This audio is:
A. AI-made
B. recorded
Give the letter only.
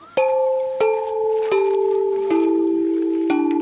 B